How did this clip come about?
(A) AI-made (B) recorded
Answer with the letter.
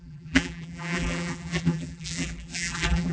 A